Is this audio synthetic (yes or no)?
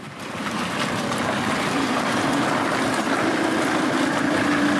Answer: no